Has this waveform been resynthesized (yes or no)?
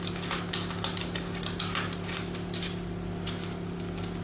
no